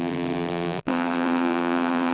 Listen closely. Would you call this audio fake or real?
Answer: fake